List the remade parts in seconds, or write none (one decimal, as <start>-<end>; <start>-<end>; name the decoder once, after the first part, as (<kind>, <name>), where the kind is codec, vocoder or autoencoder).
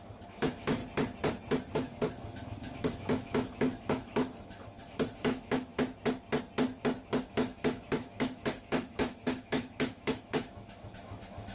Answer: 0.0-0.8 (autoencoder, DAC-VAE); 1.7-5.7; 7.2-11.5